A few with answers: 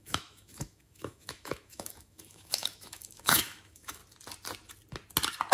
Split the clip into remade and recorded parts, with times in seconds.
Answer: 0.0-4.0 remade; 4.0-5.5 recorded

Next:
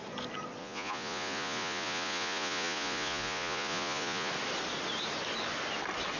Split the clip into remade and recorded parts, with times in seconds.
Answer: 0.0-0.6 recorded; 0.6-4.3 remade; 4.3-6.2 recorded

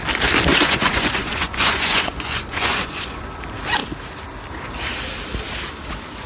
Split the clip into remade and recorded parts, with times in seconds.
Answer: 0.0-0.5 recorded; 0.5-3.2 remade; 3.2-6.3 recorded

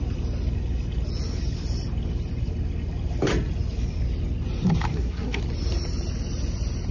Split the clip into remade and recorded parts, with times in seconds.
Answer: 0.0-4.9 recorded; 4.9-5.4 remade; 5.4-6.9 recorded

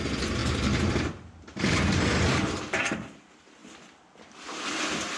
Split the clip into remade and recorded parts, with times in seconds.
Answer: 0.0-0.4 recorded; 0.4-0.9 remade; 0.9-1.5 recorded; 1.5-2.2 remade; 2.2-5.2 recorded

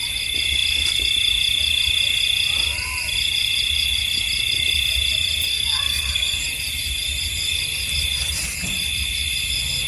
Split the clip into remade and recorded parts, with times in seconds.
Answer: 0.0-5.5 recorded; 5.5-6.4 remade; 6.4-9.9 recorded